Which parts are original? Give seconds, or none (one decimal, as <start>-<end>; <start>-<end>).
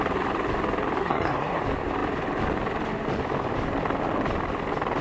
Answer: 0.0-1.0; 1.6-5.0